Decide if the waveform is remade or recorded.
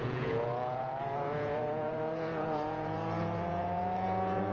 remade